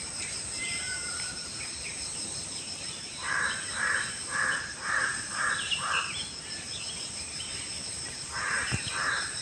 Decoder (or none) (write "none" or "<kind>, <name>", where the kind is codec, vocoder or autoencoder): vocoder, BigVGAN v2